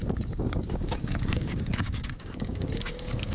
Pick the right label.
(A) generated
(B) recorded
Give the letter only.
A